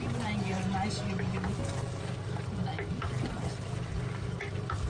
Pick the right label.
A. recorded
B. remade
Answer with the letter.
A